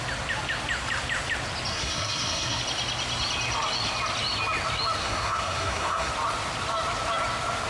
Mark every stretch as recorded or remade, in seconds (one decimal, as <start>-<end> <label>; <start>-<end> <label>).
0.0-1.7 recorded; 1.7-2.6 remade; 2.6-5.0 recorded; 5.0-6.1 remade; 6.1-7.7 recorded